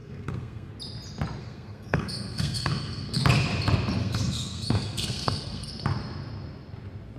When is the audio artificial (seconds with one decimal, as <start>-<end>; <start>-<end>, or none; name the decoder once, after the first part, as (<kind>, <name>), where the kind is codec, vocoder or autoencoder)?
0.0-0.7 (codec, SNAC); 1.4-3.2; 4.0-5.7